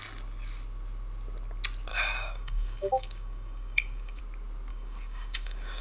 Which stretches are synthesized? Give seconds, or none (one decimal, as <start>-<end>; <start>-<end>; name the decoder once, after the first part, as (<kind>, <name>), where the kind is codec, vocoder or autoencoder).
1.9-4.2 (codec, DAC); 4.7-5.8